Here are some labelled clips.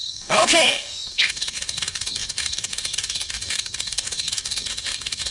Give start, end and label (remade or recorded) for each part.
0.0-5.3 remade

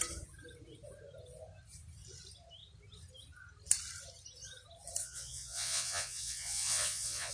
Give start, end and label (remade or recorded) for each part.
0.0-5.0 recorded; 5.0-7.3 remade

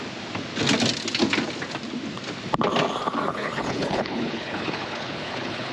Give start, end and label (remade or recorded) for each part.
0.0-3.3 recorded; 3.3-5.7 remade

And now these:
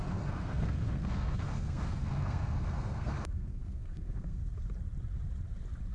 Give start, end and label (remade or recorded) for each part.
0.0-4.4 remade; 4.4-5.9 recorded

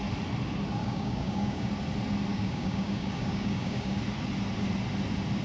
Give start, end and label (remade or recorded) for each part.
0.0-0.8 recorded; 0.8-1.7 remade; 1.7-2.3 recorded; 2.3-4.0 remade; 4.0-5.4 recorded